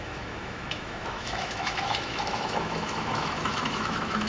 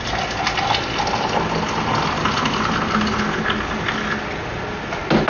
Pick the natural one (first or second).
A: second